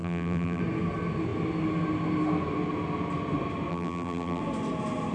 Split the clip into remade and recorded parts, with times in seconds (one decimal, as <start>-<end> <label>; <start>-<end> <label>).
0.0-0.6 remade; 0.6-3.7 recorded; 3.7-4.4 remade; 4.4-5.1 recorded